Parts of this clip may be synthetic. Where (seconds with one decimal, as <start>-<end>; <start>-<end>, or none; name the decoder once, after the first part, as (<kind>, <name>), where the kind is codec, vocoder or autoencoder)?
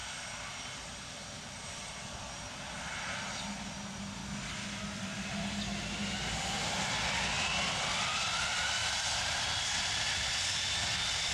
8.8-9.7 (vocoder, BigVGAN v2)